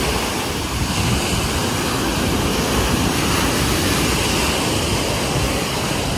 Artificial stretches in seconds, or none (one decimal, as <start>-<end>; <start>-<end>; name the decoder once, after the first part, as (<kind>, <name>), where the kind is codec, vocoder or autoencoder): none

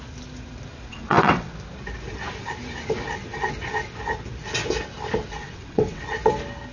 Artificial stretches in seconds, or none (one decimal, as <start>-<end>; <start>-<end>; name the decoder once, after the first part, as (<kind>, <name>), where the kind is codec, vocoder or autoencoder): 0.9-1.5 (vocoder, WaveNeXt); 5.4-6.0

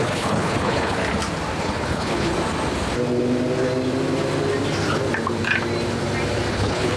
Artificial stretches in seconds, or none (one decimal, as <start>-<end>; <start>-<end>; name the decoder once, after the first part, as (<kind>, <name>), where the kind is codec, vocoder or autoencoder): 0.0-1.0 (codec, HILCodec); 1.6-2.3; 6.5-7.0

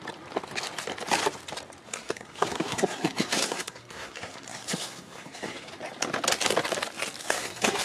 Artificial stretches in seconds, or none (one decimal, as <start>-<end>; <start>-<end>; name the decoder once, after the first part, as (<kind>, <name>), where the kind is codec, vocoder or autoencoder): 1.9-5.7 (codec, SNAC); 7.2-7.8